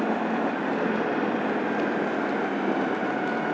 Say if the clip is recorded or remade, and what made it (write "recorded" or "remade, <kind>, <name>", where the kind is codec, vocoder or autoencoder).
recorded